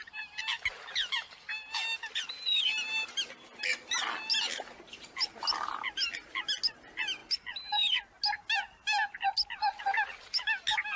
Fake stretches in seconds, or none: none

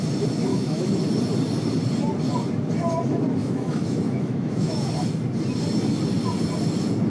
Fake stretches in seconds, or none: 0.5-1.0 (autoencoder, DAC-VAE); 3.4-4.9